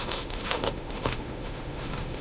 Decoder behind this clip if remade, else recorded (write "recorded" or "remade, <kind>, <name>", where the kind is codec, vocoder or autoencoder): remade, autoencoder, DAC-VAE